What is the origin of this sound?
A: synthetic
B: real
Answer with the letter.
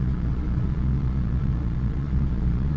A